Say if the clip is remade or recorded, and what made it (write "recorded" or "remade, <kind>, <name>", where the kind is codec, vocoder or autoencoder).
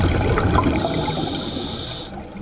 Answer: recorded